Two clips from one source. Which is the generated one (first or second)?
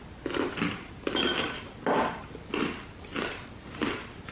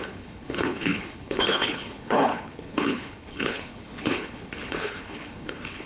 second